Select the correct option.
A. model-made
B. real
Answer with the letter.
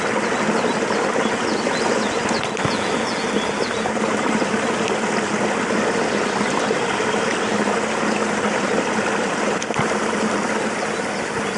B